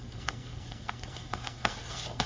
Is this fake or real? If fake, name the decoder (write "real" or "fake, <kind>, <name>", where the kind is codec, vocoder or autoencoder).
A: fake, codec, SNAC